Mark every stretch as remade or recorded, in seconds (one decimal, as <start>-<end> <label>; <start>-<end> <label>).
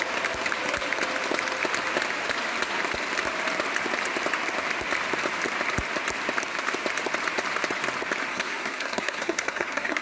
0.0-8.3 recorded; 8.3-10.0 remade